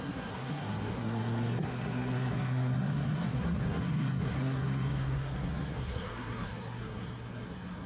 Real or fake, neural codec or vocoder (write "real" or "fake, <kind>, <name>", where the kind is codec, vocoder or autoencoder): fake, codec, SNAC